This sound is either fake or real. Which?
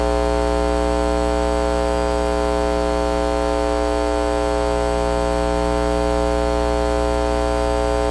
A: real